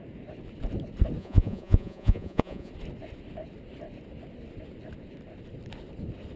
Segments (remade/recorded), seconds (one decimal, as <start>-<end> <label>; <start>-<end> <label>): 0.0-1.2 recorded; 1.2-2.7 remade; 2.7-6.4 recorded

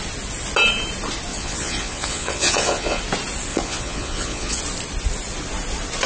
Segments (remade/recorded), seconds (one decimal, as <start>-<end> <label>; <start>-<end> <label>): 0.0-1.3 recorded; 1.3-3.0 remade; 3.0-3.5 recorded; 3.5-4.6 remade; 4.6-6.1 recorded